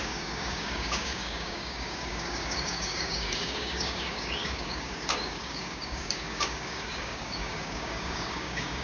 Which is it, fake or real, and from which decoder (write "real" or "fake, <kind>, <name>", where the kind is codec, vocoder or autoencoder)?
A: fake, codec, DAC